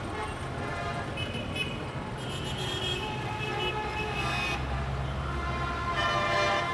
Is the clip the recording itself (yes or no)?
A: yes